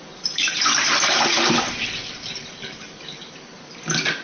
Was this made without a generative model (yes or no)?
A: yes